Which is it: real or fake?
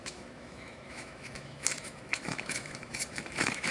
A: fake